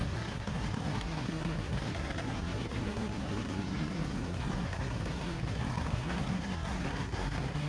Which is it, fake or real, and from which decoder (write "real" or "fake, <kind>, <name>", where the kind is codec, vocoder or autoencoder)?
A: fake, codec, SNAC